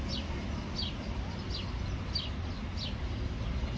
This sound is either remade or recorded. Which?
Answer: recorded